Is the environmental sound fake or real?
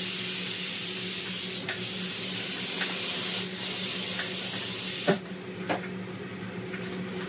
real